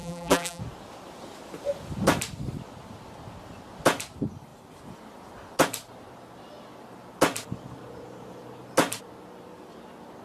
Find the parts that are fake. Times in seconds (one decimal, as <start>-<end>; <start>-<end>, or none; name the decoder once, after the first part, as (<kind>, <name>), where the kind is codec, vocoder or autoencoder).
0.0-0.6 (vocoder, BigVGAN v2)